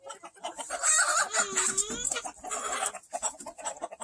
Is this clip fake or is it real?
real